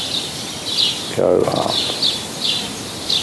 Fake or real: real